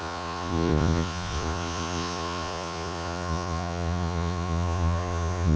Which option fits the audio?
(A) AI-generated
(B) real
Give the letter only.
A